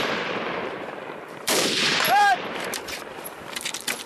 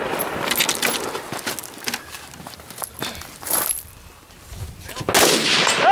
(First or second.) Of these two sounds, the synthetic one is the first